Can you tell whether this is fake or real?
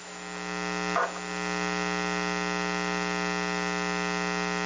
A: real